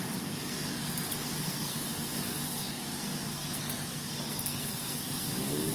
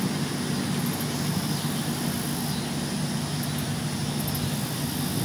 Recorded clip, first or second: second